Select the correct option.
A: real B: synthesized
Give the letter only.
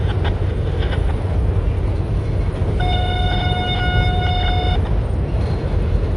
A